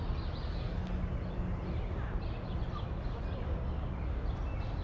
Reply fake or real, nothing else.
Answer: real